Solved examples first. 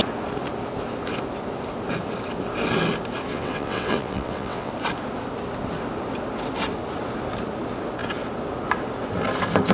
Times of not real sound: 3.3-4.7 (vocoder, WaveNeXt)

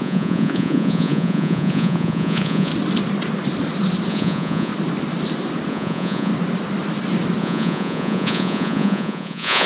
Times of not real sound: 0.0-2.7 (vocoder, Vocos); 4.1-4.7; 5.7-6.3; 7.4-9.7

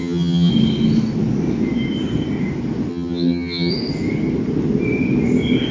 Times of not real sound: 0.0-0.5 (vocoder, HiFi-GAN); 2.9-3.7

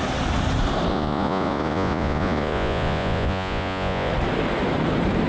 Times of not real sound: 0.9-4.1 (vocoder, Vocos)